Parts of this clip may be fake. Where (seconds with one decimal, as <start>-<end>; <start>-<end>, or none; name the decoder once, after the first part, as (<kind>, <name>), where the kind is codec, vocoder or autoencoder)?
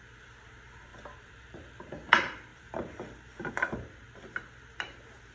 0.9-1.9 (vocoder, BigVGAN v2); 2.5-3.5